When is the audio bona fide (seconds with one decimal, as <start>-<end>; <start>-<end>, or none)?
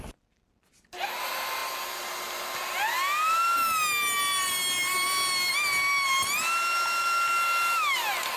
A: 0.0-8.4